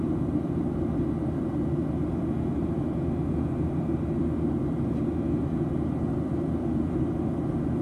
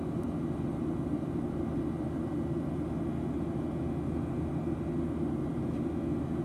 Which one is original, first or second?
second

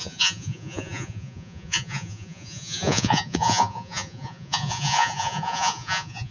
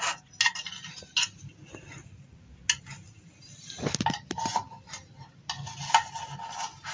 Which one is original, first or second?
second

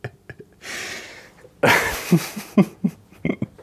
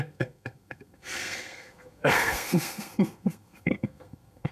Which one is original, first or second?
first